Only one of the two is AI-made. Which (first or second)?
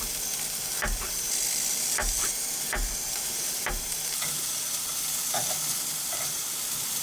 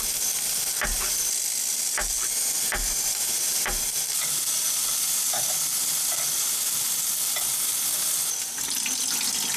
first